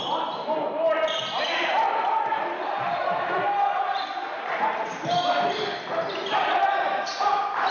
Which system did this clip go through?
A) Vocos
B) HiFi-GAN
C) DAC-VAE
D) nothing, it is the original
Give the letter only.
D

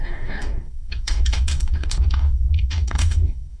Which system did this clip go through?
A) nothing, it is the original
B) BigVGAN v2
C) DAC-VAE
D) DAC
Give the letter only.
D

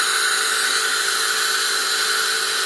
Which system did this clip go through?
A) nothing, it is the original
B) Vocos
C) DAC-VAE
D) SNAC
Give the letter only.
A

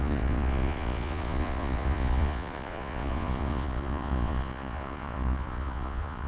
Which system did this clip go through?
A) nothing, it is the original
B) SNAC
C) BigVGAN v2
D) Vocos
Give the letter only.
D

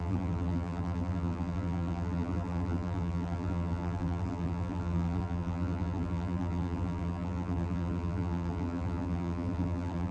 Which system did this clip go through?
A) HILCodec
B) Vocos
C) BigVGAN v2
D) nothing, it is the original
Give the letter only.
C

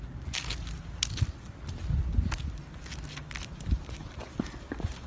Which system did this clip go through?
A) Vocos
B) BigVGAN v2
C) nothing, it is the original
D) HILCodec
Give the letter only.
C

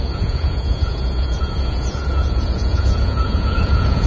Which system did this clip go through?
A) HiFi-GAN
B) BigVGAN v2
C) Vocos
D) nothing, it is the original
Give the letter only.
C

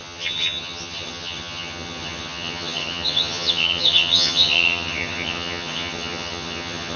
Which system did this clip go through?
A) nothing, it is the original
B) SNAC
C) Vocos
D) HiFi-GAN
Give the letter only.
D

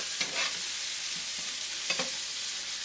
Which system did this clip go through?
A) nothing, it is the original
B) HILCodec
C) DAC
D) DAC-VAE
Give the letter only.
A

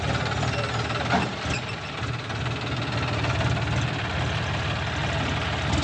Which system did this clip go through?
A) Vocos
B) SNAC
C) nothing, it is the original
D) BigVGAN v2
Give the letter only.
C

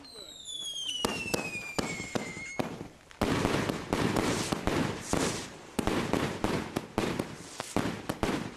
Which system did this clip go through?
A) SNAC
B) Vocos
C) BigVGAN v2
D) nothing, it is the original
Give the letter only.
D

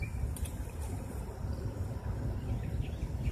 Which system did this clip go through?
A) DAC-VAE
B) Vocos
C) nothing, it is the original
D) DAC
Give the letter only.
C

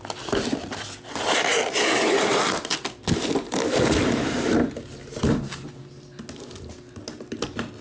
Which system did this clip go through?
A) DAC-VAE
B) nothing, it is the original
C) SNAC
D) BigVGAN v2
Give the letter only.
B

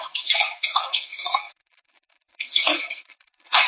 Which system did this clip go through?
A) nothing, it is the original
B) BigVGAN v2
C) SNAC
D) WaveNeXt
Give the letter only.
C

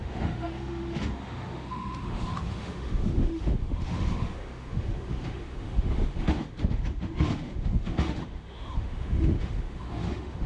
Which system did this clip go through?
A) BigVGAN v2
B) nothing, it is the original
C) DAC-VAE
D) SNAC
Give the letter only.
C